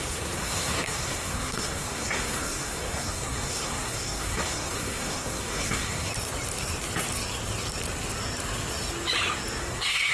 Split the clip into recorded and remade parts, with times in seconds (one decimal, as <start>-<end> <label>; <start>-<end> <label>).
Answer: 0.0-6.1 remade; 6.1-9.6 recorded; 9.6-10.1 remade